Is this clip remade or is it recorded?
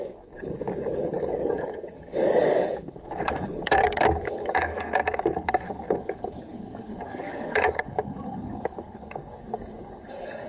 remade